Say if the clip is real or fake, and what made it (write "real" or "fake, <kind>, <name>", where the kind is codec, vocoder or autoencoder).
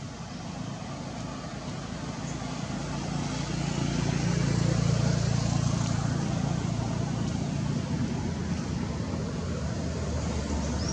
real